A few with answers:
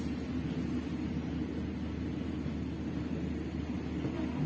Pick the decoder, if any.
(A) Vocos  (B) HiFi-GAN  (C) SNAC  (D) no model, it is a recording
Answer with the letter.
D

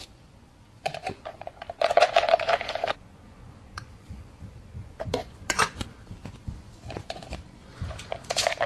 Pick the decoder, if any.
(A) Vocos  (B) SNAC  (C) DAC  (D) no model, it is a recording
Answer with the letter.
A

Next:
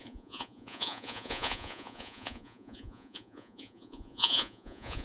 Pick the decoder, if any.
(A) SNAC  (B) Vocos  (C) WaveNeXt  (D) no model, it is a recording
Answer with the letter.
B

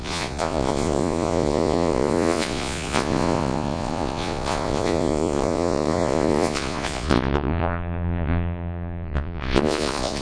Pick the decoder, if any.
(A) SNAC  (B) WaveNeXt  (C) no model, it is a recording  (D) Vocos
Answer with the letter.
D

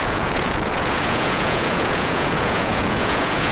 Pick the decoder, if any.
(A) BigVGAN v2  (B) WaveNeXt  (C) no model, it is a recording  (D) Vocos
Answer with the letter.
D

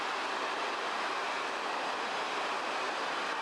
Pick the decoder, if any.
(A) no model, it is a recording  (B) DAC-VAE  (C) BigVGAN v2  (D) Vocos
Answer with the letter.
A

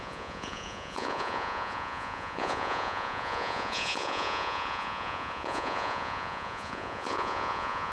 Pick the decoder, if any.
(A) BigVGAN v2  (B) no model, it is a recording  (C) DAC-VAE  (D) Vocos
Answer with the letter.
D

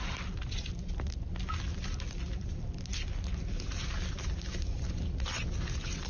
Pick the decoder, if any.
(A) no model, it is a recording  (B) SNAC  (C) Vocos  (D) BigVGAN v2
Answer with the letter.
A